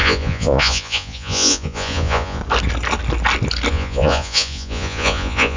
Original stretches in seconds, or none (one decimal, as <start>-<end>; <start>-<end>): 2.4-3.7